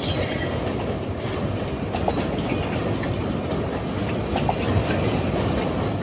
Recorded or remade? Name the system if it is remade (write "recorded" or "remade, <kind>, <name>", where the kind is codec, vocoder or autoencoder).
recorded